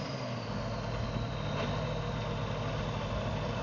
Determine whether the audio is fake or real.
real